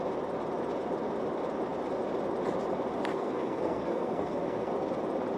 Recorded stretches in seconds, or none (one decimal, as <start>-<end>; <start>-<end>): 0.0-3.1; 4.7-5.4